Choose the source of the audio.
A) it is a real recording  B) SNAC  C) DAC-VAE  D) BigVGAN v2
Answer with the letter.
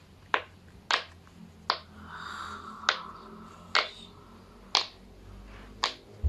A